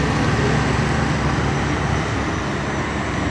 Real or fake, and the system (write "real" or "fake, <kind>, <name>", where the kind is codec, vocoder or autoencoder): real